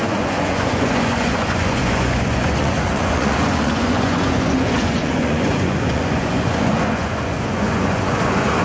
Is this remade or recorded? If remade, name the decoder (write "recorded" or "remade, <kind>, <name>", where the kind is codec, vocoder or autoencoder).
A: remade, vocoder, Vocos